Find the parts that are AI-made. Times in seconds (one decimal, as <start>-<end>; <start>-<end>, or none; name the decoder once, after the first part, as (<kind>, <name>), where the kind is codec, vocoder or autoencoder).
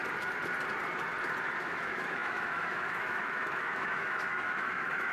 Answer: 1.6-5.1 (autoencoder, DAC-VAE)